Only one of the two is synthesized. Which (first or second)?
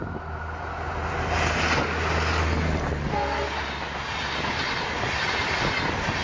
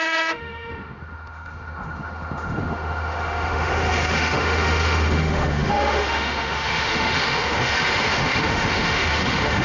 second